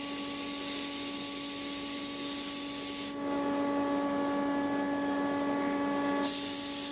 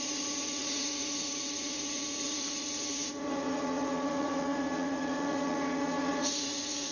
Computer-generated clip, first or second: second